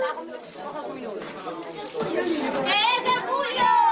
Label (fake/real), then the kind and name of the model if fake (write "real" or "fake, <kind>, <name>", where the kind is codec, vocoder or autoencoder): real